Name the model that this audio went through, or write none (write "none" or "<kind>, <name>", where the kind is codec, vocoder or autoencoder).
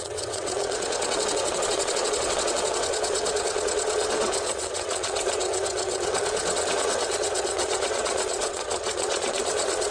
vocoder, WaveNeXt